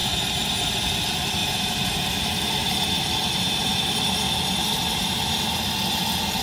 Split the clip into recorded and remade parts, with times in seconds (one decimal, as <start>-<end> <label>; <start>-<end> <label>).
0.0-0.7 remade; 0.7-1.4 recorded; 1.4-5.2 remade; 5.2-6.4 recorded